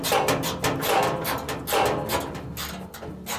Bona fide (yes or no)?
yes